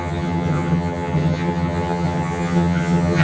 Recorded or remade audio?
remade